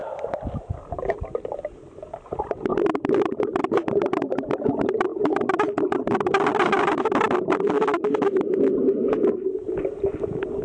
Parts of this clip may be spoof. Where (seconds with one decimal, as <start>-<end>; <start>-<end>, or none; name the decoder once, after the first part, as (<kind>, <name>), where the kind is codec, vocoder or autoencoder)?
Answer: 2.7-3.6 (vocoder, BigVGAN v2); 5.1-8.6